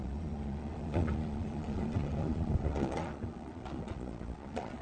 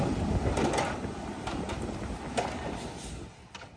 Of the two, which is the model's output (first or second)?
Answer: first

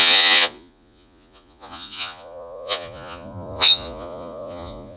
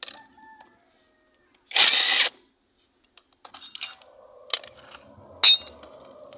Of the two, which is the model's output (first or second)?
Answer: first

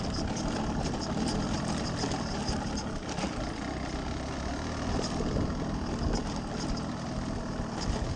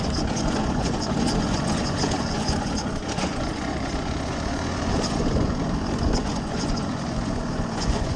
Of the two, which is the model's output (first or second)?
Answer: second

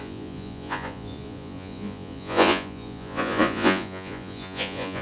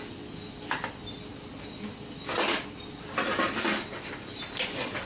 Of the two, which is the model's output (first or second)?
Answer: first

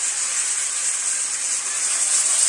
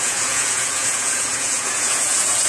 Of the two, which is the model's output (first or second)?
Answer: second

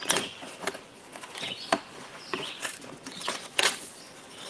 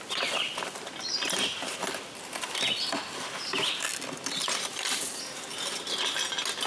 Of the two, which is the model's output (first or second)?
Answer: first